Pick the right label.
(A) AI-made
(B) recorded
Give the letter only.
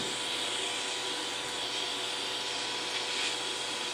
B